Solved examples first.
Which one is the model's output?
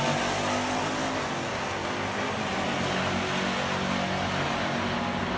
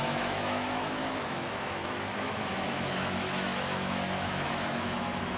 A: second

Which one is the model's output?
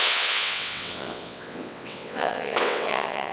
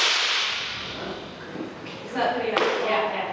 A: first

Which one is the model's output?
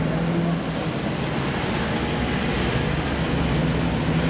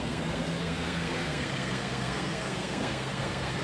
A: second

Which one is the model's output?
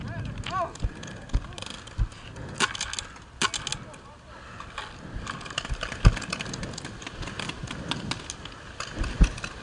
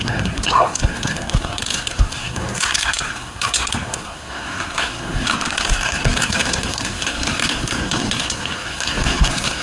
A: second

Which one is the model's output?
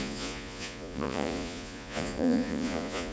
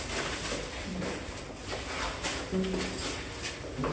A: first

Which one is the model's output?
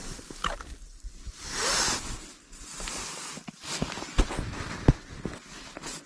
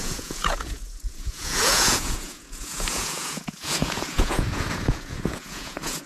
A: second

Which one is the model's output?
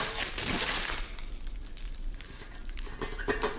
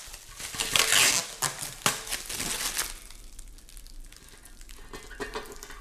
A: first